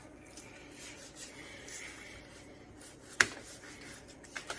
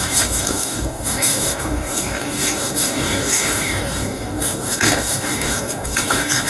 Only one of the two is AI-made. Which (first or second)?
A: second